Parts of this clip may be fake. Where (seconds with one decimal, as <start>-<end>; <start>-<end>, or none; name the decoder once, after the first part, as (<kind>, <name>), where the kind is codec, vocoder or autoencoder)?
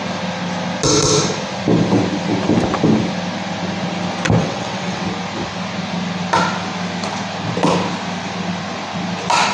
4.4-5.0 (vocoder, WaveNeXt)